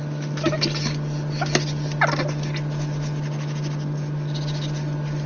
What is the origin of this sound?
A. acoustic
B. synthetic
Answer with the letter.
A